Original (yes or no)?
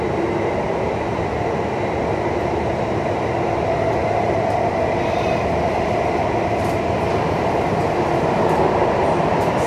yes